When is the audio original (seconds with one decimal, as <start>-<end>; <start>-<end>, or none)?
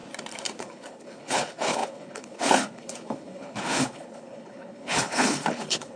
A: 0.0-0.6